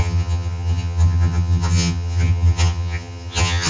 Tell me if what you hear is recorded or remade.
remade